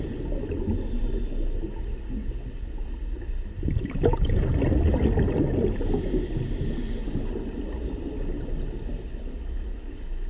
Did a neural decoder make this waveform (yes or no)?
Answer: no